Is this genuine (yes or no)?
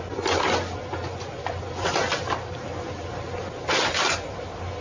yes